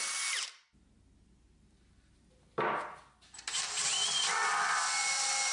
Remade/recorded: recorded